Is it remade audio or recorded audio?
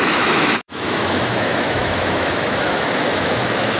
remade